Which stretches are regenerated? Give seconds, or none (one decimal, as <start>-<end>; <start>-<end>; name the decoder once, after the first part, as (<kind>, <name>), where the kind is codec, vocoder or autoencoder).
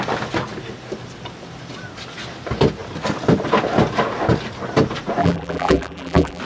5.2-6.4 (vocoder, BigVGAN v2)